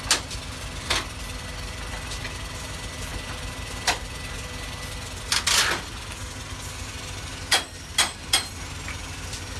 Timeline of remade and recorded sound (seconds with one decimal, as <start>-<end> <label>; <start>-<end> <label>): 0.0-7.9 recorded; 7.9-8.5 remade; 8.5-9.6 recorded

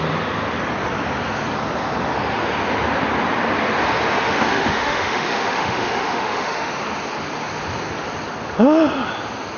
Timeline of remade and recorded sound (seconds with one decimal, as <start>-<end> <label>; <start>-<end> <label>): 0.0-4.1 recorded; 4.1-6.7 remade; 6.7-9.6 recorded

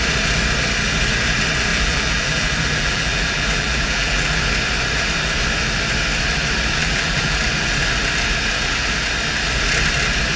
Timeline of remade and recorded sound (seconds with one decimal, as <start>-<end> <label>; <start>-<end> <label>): 0.0-1.7 recorded; 1.7-4.3 remade; 4.3-6.8 recorded; 6.8-7.4 remade; 7.4-10.4 recorded